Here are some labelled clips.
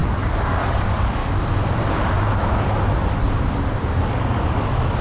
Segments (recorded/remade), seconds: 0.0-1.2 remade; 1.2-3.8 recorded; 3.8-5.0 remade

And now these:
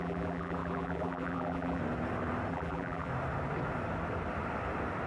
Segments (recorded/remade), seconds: 0.0-1.8 remade; 1.8-2.5 recorded; 2.5-3.1 remade; 3.1-5.1 recorded

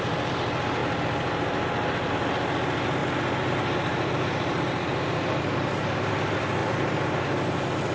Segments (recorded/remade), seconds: 0.0-3.9 recorded; 3.9-5.9 remade; 5.9-6.6 recorded; 6.6-7.2 remade; 7.2-7.9 recorded

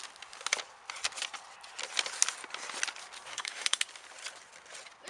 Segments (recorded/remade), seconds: 0.0-3.3 recorded; 3.3-3.8 remade; 3.8-5.1 recorded

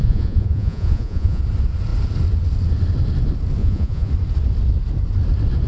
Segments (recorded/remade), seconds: 0.0-1.4 remade; 1.4-3.6 recorded; 3.6-4.1 remade; 4.1-5.7 recorded

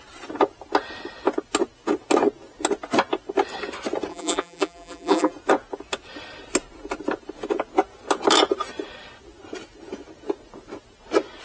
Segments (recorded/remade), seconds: 0.0-4.1 recorded; 4.1-5.3 remade; 5.3-11.4 recorded